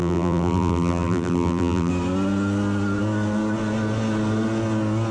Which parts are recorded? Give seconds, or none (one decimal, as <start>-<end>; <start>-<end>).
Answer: 1.9-5.1